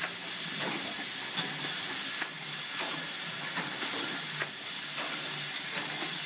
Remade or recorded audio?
recorded